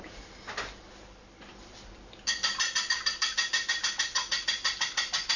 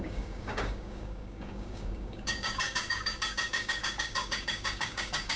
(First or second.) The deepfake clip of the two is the second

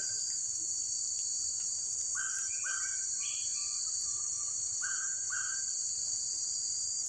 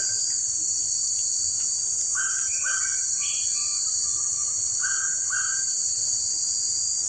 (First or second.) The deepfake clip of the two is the first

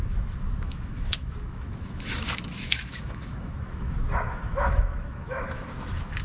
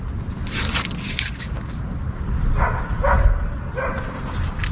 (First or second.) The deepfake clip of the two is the first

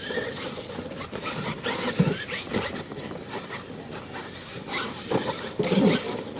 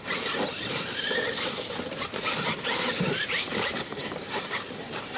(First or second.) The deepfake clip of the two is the second